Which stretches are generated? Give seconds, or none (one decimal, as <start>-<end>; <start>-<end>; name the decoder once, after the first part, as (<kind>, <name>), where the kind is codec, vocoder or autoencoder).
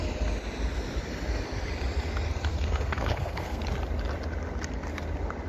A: 2.5-3.6 (codec, SNAC)